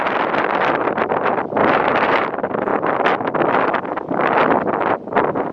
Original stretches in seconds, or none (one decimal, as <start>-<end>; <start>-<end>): 0.0-1.6; 2.3-5.5